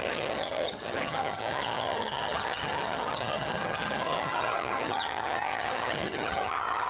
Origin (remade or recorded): remade